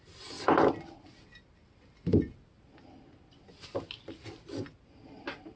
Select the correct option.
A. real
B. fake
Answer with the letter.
A